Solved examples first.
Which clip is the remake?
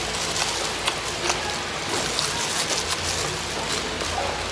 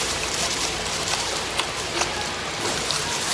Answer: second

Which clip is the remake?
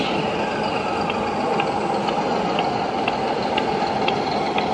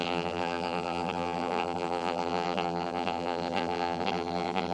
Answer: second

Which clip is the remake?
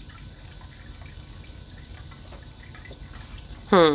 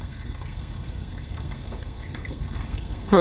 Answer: second